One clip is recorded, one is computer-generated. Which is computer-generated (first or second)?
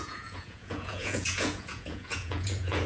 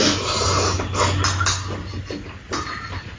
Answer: first